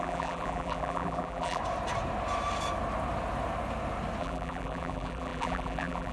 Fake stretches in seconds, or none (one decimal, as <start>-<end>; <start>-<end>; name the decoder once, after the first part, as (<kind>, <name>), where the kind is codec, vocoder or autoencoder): 0.0-1.6 (vocoder, BigVGAN v2); 4.2-6.1